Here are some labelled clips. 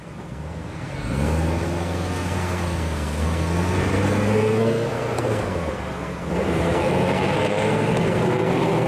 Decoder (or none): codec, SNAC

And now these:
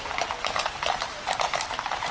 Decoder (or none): none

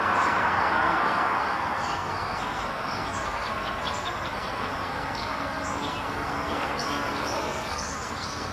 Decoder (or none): codec, SNAC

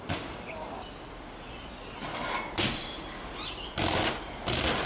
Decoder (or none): none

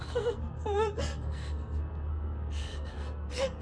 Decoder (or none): codec, SNAC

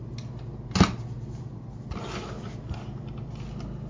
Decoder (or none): none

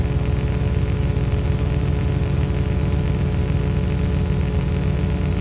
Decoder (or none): none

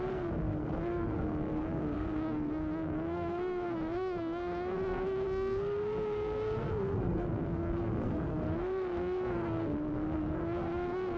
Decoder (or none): codec, SNAC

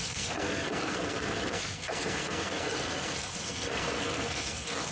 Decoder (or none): codec, SNAC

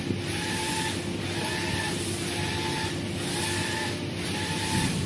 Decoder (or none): none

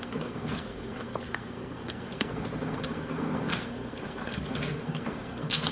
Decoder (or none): codec, SNAC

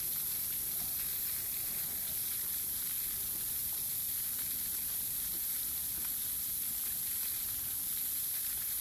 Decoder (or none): none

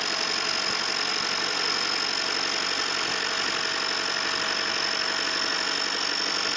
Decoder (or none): none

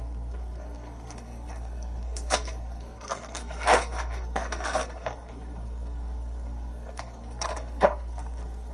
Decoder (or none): codec, SNAC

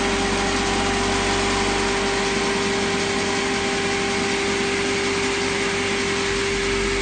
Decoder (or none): none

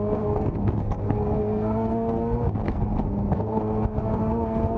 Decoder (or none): codec, SNAC